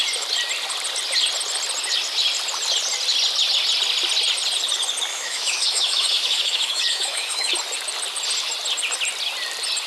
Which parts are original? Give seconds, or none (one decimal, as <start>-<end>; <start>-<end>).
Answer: 0.0-5.1; 7.5-9.9